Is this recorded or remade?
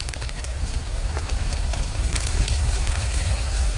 remade